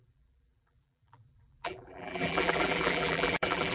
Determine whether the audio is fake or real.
fake